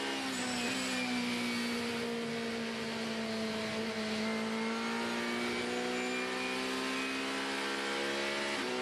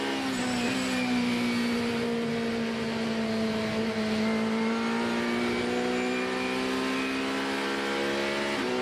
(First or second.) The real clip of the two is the first